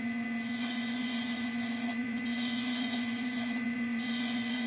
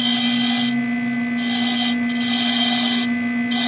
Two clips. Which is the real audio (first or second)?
second